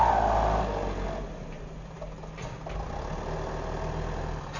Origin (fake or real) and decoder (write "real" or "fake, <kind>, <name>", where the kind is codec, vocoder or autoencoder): real